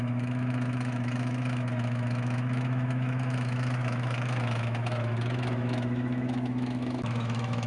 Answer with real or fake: fake